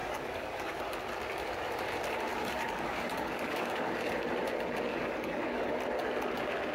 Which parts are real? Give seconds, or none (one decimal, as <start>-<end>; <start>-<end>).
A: 0.8-2.3; 4.1-4.9; 5.7-6.7